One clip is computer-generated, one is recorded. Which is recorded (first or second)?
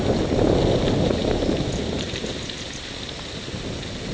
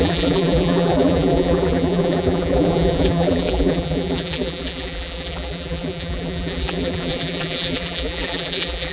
first